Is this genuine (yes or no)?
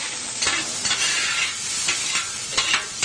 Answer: yes